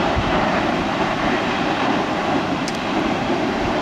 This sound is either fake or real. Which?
fake